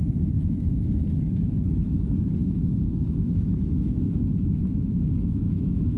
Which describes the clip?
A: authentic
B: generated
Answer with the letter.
B